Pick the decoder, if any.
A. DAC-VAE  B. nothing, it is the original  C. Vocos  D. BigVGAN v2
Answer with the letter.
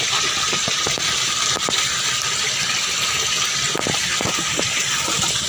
B